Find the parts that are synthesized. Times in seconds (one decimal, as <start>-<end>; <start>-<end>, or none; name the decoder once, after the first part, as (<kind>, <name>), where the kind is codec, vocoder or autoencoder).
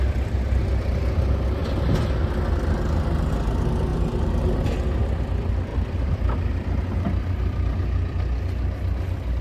3.9-4.5 (vocoder, BigVGAN v2); 5.7-6.8